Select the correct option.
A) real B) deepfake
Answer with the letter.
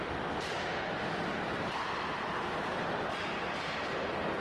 A